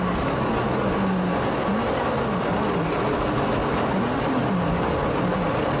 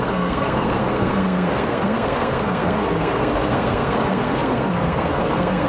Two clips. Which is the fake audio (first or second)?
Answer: second